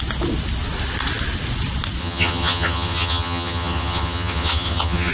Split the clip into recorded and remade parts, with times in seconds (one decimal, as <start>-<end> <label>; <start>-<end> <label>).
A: 0.0-2.0 recorded; 2.0-5.1 remade